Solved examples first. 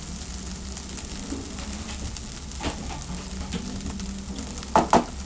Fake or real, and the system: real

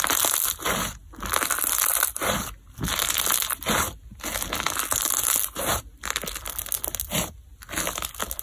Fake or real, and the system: real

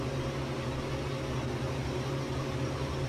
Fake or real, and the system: real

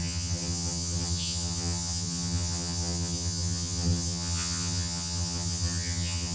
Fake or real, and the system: fake, vocoder, HiFi-GAN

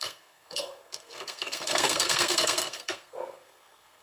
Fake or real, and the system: fake, codec, SNAC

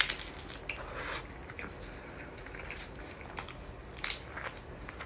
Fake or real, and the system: real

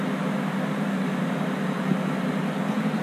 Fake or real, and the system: real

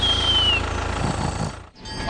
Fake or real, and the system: real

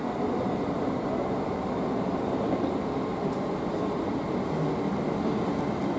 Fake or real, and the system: real